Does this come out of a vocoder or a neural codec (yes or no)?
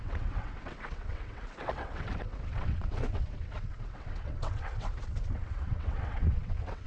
yes